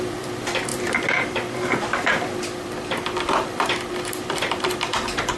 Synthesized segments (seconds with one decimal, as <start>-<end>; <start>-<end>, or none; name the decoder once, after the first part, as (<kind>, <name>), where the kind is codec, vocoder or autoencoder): 0.0-5.4 (vocoder, BigVGAN v2)